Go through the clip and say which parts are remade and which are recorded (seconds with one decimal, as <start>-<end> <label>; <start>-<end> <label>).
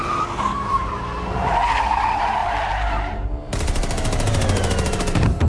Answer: 0.0-1.6 remade; 1.6-2.4 recorded; 2.4-5.5 remade